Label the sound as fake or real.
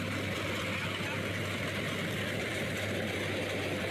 fake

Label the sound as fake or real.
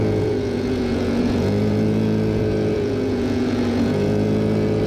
fake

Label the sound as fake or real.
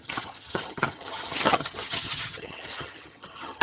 fake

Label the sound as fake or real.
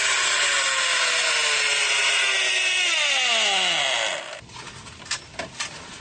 real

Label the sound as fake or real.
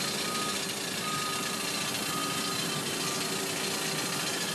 real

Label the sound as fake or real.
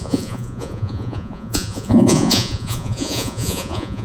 fake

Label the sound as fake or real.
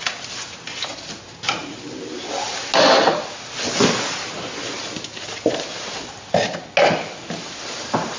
real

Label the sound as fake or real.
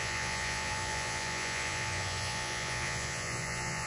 fake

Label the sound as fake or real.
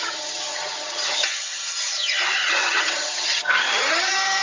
fake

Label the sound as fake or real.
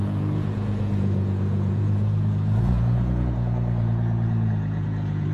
fake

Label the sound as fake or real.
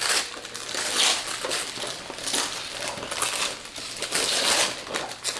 real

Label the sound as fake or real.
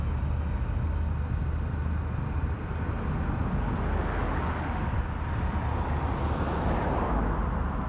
real